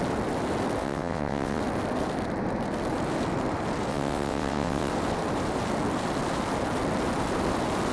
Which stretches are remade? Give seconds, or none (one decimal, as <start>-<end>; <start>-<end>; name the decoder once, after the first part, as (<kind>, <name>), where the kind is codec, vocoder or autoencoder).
0.8-1.6 (vocoder, WaveNeXt); 3.9-4.9